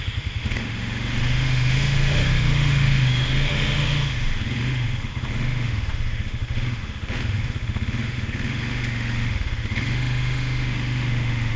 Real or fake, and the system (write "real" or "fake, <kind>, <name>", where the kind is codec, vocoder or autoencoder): fake, autoencoder, DAC-VAE